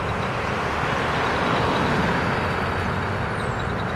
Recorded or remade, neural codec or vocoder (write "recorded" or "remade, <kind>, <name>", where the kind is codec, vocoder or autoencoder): recorded